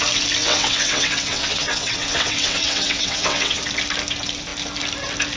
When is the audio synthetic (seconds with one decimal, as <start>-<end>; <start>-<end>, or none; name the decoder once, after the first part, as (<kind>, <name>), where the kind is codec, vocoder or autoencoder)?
0.4-3.6 (vocoder, WaveNeXt)